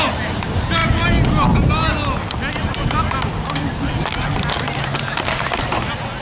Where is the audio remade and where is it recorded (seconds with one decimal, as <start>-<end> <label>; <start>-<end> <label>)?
0.0-6.2 recorded